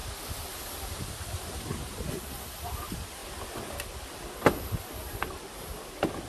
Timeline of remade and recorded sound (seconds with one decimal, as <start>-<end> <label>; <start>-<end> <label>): 0.0-6.3 recorded